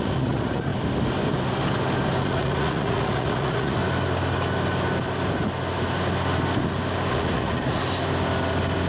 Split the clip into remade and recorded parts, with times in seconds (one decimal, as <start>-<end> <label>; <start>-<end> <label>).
0.0-0.7 remade; 0.7-2.2 recorded; 2.2-3.8 remade; 3.8-7.1 recorded; 7.1-7.8 remade; 7.8-8.9 recorded